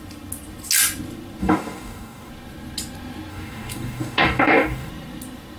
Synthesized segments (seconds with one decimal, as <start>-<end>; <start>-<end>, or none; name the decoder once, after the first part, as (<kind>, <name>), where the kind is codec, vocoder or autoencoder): 1.4-2.3 (codec, DAC); 3.3-4.9